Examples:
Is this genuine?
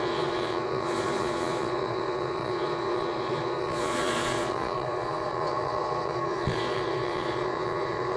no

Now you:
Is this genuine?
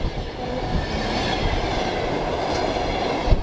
yes